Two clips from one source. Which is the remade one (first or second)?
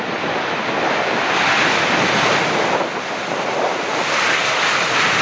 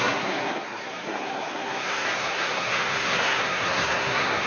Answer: second